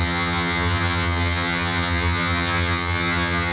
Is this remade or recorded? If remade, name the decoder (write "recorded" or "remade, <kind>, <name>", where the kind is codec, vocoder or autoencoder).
remade, vocoder, HiFi-GAN